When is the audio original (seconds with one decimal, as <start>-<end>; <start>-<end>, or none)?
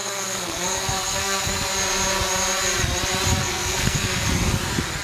1.5-3.4; 4.3-5.0